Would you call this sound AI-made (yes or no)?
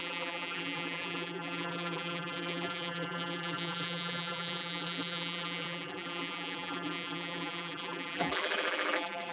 yes